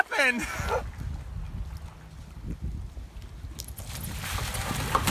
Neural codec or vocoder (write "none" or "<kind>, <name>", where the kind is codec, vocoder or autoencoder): none